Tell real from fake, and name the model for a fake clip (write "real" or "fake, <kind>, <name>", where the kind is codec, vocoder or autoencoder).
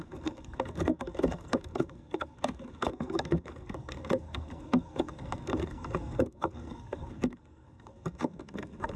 fake, codec, SNAC